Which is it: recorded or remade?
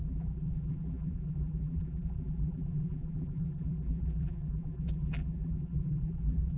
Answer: remade